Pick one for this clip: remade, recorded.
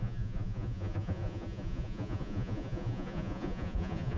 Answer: remade